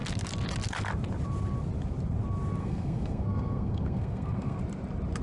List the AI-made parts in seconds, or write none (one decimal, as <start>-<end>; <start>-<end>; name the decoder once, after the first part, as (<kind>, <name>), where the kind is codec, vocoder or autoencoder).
2.6-4.6 (codec, SNAC)